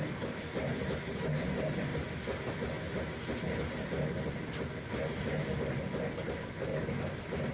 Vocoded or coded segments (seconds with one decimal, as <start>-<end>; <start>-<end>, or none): none